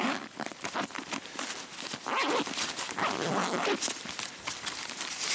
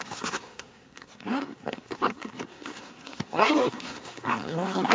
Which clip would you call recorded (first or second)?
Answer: first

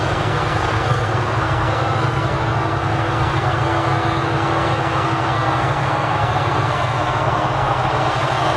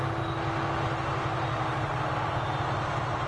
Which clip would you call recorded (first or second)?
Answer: second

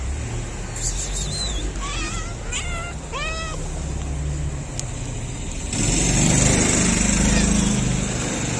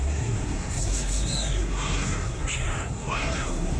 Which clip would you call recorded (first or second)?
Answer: first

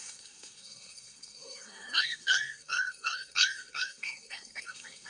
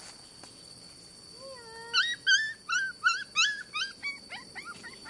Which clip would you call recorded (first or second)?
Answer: second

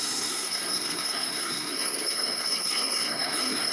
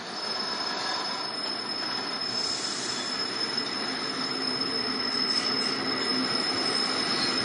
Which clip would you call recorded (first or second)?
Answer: second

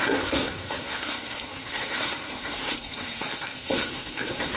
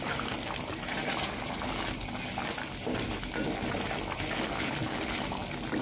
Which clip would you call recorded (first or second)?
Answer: second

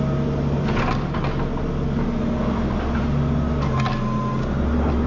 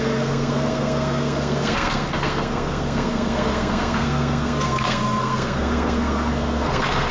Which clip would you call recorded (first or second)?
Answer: first